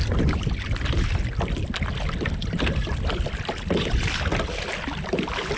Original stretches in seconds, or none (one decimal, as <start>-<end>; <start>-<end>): 0.0-5.6